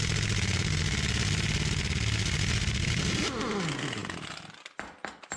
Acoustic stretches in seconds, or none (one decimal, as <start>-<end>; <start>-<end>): 0.0-5.4